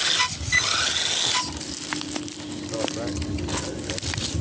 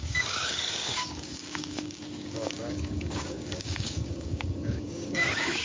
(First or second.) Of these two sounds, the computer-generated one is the second